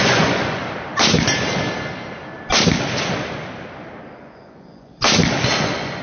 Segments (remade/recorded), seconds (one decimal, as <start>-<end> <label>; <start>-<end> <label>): 0.0-0.6 remade; 0.6-4.2 recorded; 4.2-4.9 remade; 4.9-5.6 recorded; 5.6-6.0 remade